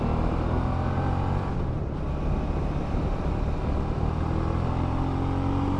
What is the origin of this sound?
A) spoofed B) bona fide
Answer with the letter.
B